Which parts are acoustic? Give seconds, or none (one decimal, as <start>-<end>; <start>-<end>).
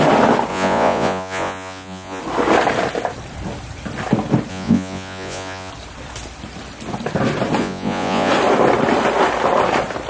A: 0.0-0.5; 2.2-4.5; 5.7-7.6; 8.3-10.1